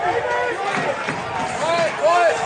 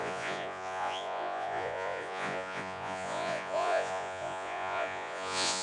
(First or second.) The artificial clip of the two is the second